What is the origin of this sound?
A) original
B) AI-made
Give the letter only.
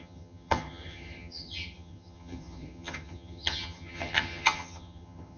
B